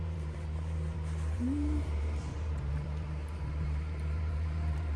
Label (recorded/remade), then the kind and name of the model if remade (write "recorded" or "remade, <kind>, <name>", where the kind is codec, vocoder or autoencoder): remade, vocoder, BigVGAN v2